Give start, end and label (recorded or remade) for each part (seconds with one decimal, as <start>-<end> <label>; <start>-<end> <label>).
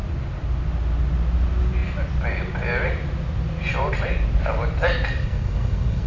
0.0-5.2 recorded; 5.2-6.1 remade